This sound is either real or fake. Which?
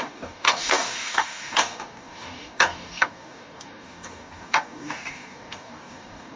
fake